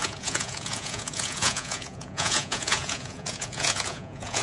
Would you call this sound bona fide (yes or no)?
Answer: no